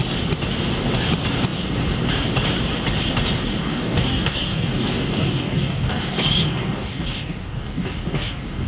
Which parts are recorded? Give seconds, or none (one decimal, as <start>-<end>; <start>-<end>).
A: 0.0-3.6